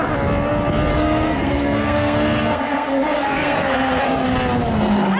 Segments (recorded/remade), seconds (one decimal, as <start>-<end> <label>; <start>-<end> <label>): 0.0-0.9 recorded; 0.9-4.0 remade; 4.0-5.2 recorded